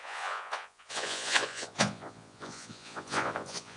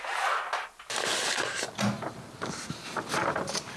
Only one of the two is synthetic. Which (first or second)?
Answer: first